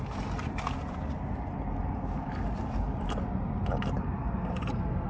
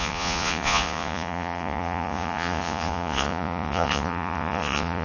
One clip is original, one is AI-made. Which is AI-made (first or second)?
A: second